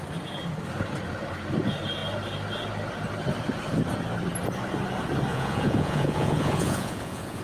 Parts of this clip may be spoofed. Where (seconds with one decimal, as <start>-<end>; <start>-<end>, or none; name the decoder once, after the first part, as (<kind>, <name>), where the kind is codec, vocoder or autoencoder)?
5.3-7.4 (vocoder, Vocos)